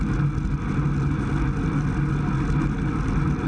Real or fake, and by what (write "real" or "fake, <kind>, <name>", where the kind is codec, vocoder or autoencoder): real